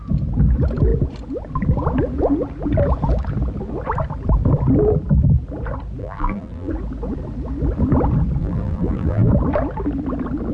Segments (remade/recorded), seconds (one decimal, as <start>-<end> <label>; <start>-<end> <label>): 0.0-6.0 recorded; 6.0-6.7 remade; 6.7-8.4 recorded; 8.4-9.3 remade; 9.3-10.5 recorded

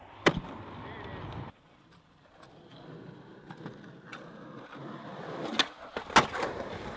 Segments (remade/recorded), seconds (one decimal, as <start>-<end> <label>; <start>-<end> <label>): 0.0-2.7 remade; 2.7-4.8 recorded; 4.8-5.5 remade; 5.5-6.2 recorded; 6.2-7.0 remade

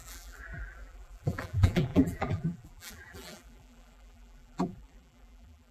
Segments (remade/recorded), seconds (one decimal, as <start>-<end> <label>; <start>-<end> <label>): 0.0-5.7 remade

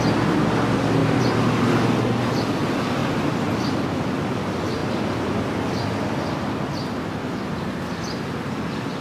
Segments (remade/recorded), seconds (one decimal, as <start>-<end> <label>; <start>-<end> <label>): 0.0-1.0 recorded; 1.0-1.8 remade; 1.8-3.0 recorded; 3.0-4.1 remade; 4.1-4.8 recorded; 4.8-5.7 remade; 5.7-9.0 recorded